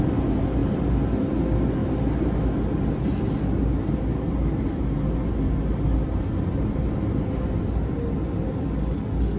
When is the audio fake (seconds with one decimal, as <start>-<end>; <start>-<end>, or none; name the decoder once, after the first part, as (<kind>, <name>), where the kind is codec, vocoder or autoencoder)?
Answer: none